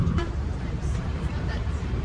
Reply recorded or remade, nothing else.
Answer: remade